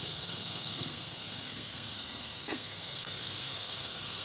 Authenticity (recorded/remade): remade